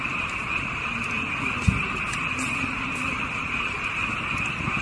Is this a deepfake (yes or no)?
no